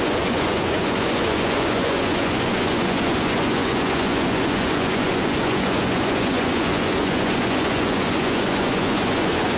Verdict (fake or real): fake